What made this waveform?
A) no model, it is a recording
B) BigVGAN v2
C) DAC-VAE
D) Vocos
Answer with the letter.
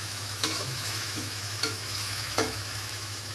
C